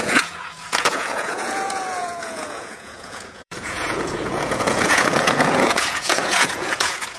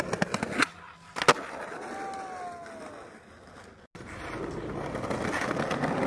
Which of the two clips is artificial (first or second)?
first